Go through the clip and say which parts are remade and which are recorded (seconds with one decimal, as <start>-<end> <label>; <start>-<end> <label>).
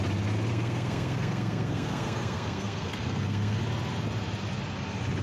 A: 0.0-0.5 recorded; 0.5-3.6 remade; 3.6-5.2 recorded